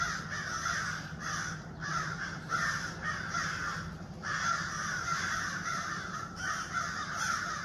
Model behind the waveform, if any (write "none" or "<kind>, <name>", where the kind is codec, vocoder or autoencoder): none